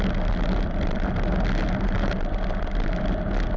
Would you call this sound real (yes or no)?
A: yes